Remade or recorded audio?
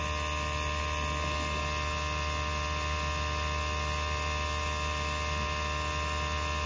recorded